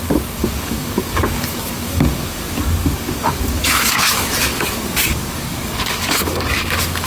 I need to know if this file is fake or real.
fake